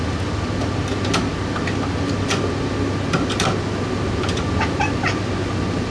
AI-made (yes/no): no